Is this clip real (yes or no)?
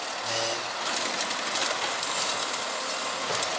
yes